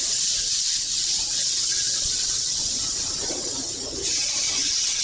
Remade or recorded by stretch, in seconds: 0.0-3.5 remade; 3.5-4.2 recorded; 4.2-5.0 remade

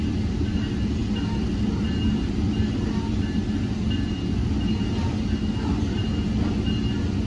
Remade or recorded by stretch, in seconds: 0.0-7.3 recorded

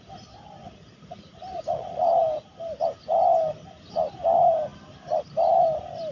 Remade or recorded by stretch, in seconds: 0.0-0.6 recorded; 0.6-2.1 remade; 2.1-6.1 recorded

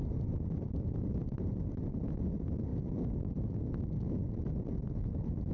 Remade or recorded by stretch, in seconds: 0.0-5.5 recorded

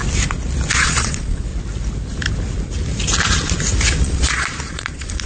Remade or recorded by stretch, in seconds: 0.0-0.8 recorded; 0.8-1.5 remade; 1.5-4.0 recorded; 4.0-5.3 remade

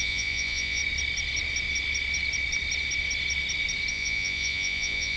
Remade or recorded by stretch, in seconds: 0.0-0.8 remade; 0.8-3.9 recorded; 3.9-5.2 remade